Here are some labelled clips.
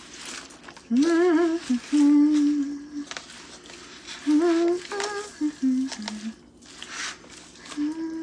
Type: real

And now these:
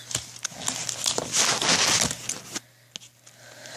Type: real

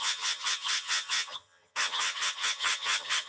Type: fake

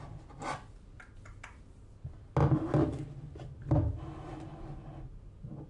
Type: real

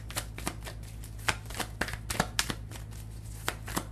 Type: real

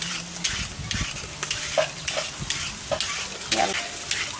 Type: real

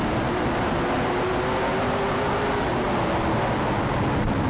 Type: real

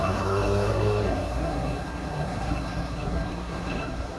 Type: fake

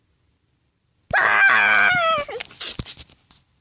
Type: real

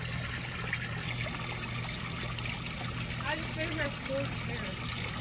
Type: real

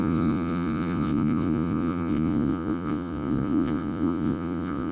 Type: fake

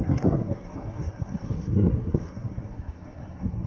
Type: fake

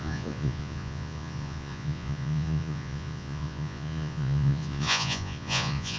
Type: fake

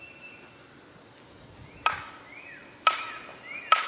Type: real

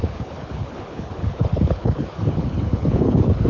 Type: fake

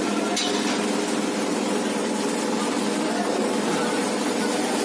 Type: real